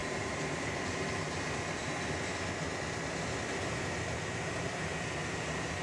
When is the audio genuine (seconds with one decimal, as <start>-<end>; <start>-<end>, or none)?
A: 1.3-5.8